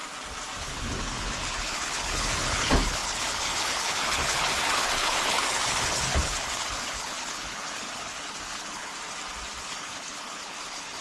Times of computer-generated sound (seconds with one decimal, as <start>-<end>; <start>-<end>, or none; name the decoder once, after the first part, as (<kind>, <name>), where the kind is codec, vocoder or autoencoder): 0.6-8.9 (codec, HILCodec); 9.6-11.0